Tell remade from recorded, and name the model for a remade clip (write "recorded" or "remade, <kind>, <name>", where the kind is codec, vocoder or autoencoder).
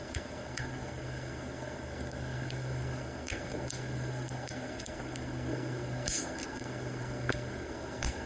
remade, codec, SNAC